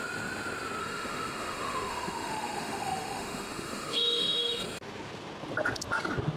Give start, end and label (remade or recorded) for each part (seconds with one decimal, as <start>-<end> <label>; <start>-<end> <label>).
0.0-0.8 recorded; 0.8-4.6 remade; 4.6-6.4 recorded